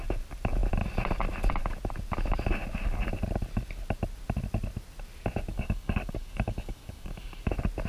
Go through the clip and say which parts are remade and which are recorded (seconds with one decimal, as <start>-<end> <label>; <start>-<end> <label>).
0.0-5.5 recorded; 5.5-7.5 remade; 7.5-7.9 recorded